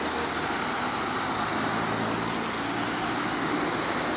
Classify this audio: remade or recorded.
recorded